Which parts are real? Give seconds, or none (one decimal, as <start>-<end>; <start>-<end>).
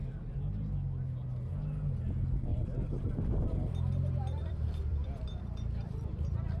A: 0.0-2.5